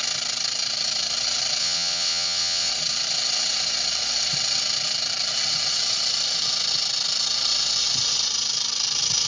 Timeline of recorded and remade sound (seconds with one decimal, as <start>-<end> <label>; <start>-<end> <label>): 0.0-1.6 recorded; 1.6-2.7 remade; 2.7-9.3 recorded